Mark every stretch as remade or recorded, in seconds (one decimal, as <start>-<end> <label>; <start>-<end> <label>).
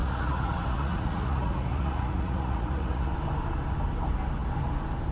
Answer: 0.0-3.1 remade; 3.1-5.1 recorded